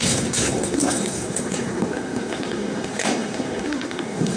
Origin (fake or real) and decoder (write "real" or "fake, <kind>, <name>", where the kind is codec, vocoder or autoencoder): fake, codec, SNAC